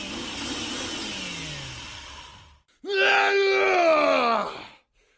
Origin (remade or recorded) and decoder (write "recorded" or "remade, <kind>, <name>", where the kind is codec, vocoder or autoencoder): recorded